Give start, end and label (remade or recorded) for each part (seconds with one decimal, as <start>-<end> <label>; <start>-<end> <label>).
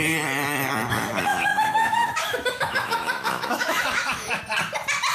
0.0-1.3 recorded; 1.3-4.4 remade; 4.4-5.1 recorded